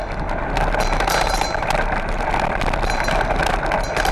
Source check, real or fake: real